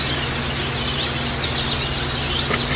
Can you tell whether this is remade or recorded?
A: recorded